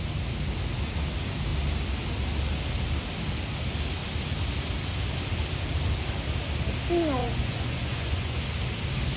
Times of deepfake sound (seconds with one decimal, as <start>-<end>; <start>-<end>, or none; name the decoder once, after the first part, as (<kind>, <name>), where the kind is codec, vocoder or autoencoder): 7.2-8.4 (vocoder, Vocos)